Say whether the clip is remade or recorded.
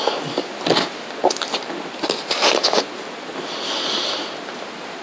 recorded